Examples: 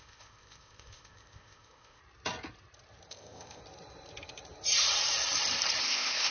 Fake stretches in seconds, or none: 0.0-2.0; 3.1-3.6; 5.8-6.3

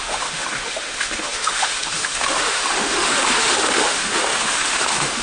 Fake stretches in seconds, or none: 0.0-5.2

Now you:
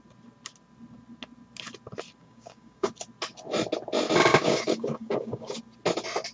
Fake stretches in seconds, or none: 2.2-2.9; 4.3-5.6

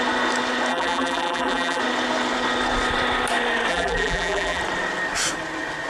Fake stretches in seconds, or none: 0.7-1.8; 3.7-4.6